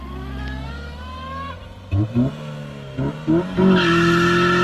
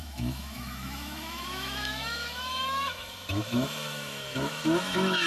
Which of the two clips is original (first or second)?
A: first